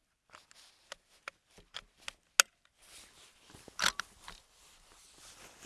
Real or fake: real